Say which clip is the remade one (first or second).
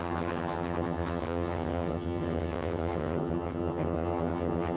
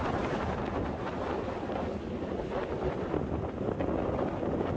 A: first